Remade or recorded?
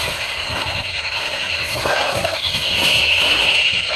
remade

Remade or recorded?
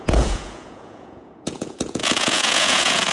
remade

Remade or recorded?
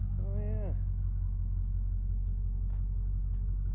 recorded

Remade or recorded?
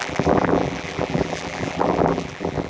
remade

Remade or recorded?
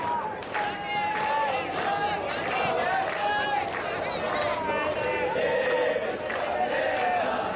recorded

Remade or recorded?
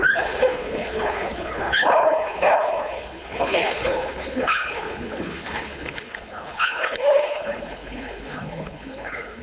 remade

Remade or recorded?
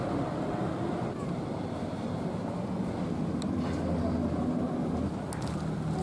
recorded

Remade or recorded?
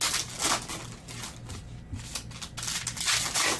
recorded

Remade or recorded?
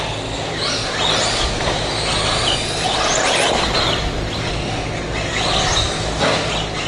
recorded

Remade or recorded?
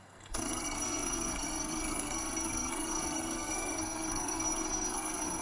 remade